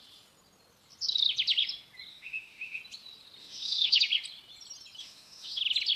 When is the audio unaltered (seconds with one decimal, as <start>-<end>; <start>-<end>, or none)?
0.0-2.1; 2.8-3.4; 4.0-5.0; 5.6-6.0